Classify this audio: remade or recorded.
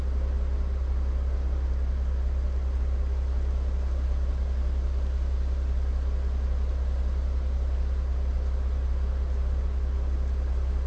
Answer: recorded